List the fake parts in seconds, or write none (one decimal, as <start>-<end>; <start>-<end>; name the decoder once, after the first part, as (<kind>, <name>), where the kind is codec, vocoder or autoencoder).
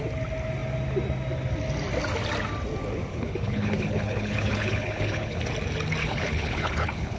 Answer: 3.1-5.4 (codec, HILCodec); 6.0-7.2